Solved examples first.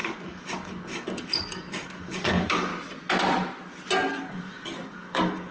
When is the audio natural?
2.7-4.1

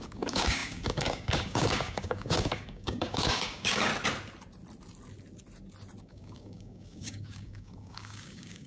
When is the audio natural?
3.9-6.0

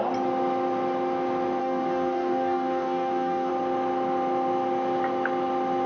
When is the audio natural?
0.0-1.6; 3.5-5.9

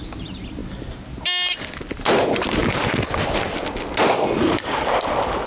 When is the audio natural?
0.0-5.5

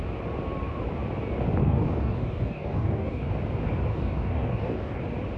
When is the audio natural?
0.0-1.6; 3.3-3.9; 5.0-5.4

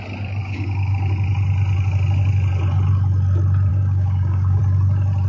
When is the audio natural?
0.0-0.4; 1.1-3.7; 4.6-5.3

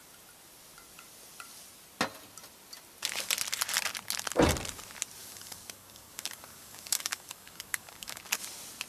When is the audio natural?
0.0-5.2; 8.2-8.9